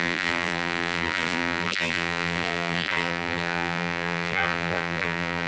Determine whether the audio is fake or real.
fake